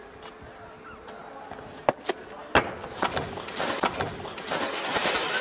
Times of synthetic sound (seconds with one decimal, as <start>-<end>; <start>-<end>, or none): none